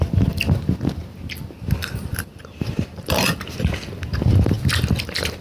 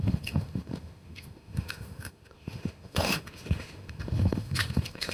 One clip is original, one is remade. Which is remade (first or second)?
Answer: second